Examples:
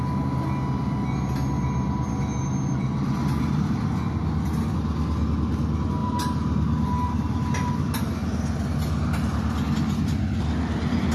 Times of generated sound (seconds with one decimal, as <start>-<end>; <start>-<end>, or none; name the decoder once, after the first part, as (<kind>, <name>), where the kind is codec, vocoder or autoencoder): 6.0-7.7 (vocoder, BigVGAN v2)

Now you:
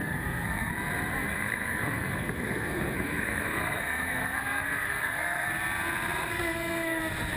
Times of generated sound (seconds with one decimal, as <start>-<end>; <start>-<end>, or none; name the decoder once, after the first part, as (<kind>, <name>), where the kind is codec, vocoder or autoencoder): 0.0-0.7 (codec, SNAC); 1.1-5.5; 6.2-7.0

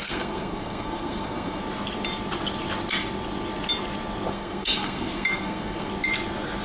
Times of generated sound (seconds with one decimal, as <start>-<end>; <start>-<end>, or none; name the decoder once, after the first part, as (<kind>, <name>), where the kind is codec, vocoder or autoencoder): 0.0-1.6 (codec, SNAC); 4.3-5.9

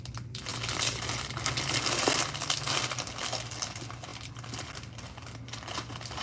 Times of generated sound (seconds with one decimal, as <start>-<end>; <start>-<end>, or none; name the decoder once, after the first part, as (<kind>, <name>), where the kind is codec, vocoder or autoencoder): none

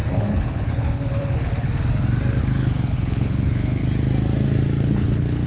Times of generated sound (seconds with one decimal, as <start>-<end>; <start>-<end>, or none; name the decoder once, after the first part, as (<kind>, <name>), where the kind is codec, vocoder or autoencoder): 0.0-1.7 (codec, HILCodec); 2.4-3.8; 4.8-5.5